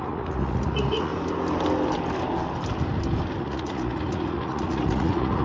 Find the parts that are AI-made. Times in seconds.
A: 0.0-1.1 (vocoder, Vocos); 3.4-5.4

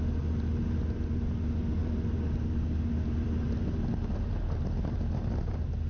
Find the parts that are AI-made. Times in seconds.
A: none

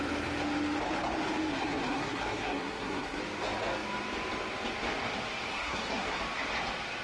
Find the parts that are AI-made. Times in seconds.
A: 1.5-3.2 (codec, SNAC); 5.5-6.2